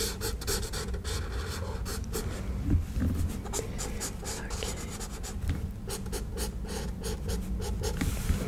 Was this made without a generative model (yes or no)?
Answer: yes